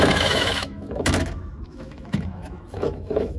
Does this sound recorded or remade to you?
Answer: remade